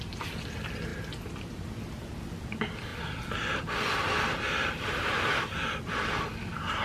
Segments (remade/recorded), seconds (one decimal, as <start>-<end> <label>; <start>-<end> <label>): 0.0-6.8 recorded